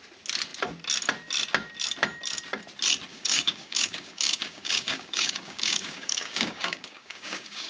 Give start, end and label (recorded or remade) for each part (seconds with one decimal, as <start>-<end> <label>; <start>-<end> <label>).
0.0-3.1 recorded; 3.1-7.7 remade